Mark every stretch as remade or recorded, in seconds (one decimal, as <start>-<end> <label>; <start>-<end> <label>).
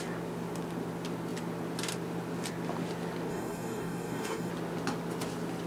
0.0-3.3 recorded; 3.3-4.5 remade; 4.5-5.7 recorded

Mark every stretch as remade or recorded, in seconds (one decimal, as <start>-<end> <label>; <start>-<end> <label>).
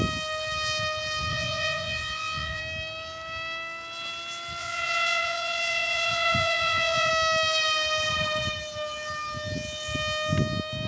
0.0-1.3 recorded; 1.3-2.6 remade; 2.6-4.6 recorded; 4.6-7.1 remade; 7.1-10.9 recorded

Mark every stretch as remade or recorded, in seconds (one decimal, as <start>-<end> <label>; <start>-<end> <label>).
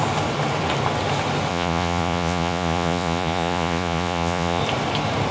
0.0-1.5 recorded; 1.5-4.6 remade; 4.6-5.3 recorded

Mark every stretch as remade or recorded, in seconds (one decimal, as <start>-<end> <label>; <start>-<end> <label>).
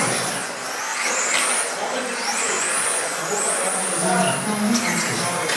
0.0-0.9 remade; 0.9-2.4 recorded; 2.4-3.8 remade; 3.8-5.6 recorded